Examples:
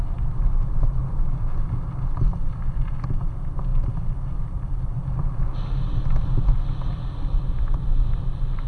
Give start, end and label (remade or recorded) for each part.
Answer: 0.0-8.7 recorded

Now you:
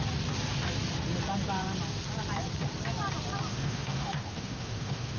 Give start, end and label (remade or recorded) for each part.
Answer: 0.0-3.5 recorded; 3.5-5.2 remade

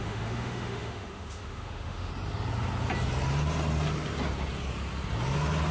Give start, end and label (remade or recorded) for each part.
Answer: 0.0-2.1 remade; 2.1-5.7 recorded

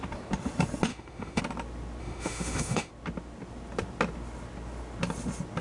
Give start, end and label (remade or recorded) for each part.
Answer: 0.0-0.9 recorded; 0.9-1.4 remade; 1.4-2.0 recorded; 2.0-2.9 remade; 2.9-5.6 recorded

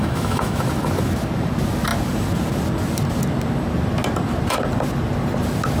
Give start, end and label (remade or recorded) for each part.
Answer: 0.0-0.6 remade; 0.6-5.8 recorded

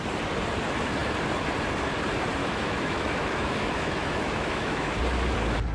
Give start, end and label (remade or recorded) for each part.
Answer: 0.0-2.4 recorded; 2.4-4.9 remade; 4.9-5.7 recorded

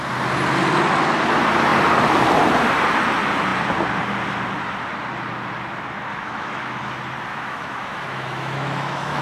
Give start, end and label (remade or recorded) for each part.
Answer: 0.0-6.1 recorded; 6.1-6.8 remade; 6.8-7.3 recorded; 7.3-9.2 remade

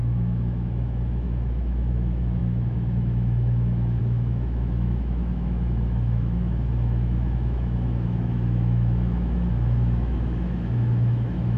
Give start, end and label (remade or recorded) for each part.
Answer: 0.0-11.6 remade